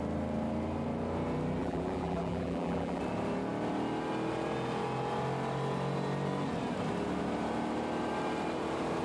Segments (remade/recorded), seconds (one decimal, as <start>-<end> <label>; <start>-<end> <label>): 0.0-1.6 recorded; 1.6-3.0 remade; 3.0-9.0 recorded